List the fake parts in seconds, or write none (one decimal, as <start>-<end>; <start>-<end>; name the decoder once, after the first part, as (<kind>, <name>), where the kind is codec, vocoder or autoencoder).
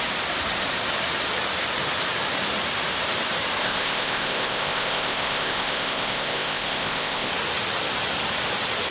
3.6-7.3 (codec, ZipCodec)